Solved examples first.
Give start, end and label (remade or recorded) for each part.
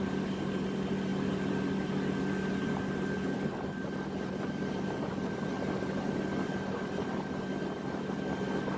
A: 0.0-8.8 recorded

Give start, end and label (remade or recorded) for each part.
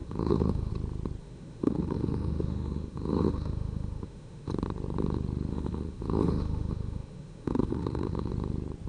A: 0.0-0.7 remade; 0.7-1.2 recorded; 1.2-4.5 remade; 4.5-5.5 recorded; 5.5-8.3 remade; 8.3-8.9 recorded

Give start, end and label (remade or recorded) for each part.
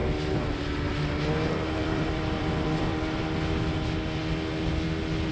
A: 0.0-1.8 recorded; 1.8-3.2 remade; 3.2-5.3 recorded